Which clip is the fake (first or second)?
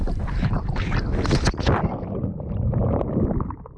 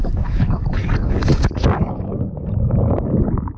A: second